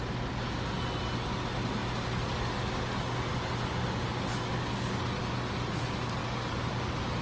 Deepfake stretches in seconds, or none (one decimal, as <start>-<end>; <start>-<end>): none